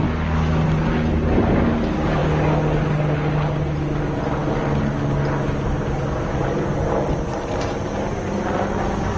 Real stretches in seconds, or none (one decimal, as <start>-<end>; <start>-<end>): 0.0-9.2